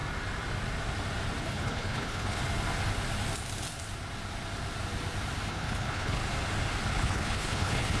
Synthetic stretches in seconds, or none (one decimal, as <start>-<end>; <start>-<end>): 1.4-2.4; 5.5-6.2; 6.9-8.0